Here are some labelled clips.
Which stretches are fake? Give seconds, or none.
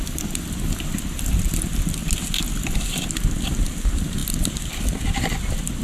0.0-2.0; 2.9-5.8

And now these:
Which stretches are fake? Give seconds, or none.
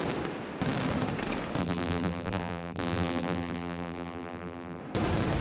1.6-4.8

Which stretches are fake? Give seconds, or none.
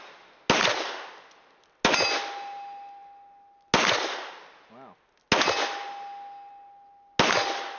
none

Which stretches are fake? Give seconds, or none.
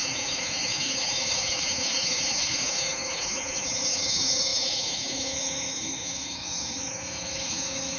0.0-8.0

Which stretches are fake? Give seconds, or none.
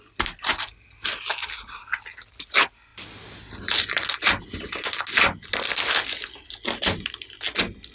none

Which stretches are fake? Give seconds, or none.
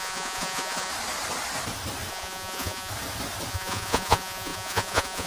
0.0-0.9; 2.1-2.9; 3.5-5.3